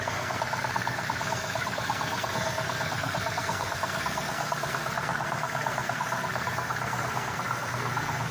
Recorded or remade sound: remade